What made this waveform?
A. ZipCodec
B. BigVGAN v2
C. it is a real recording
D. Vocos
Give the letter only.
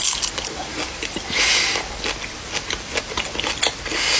C